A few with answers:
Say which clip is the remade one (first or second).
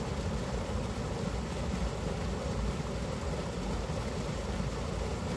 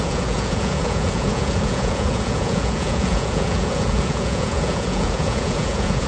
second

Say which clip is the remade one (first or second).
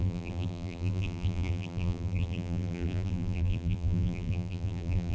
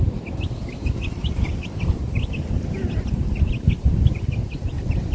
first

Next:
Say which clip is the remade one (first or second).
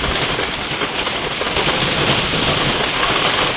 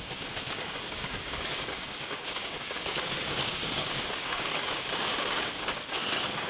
second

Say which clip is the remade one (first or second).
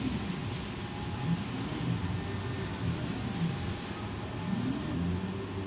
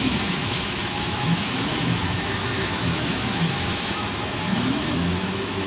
second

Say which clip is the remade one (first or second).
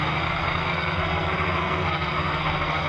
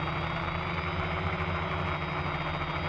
first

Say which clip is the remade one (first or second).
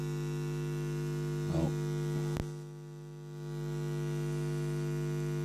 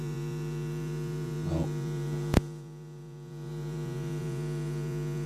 second